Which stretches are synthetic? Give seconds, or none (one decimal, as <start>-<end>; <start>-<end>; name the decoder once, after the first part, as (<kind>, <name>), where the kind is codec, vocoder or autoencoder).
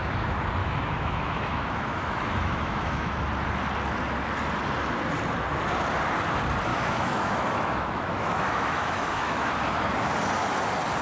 0.6-3.2 (autoencoder, DAC-VAE); 6.7-9.5